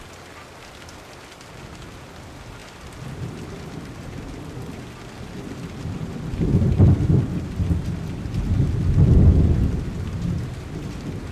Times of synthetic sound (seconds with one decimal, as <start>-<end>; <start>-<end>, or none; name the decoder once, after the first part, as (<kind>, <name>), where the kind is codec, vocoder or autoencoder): none